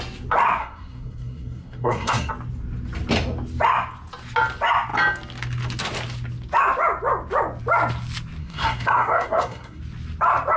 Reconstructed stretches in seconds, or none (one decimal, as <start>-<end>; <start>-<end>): 0.6-2.3; 8.4-9.8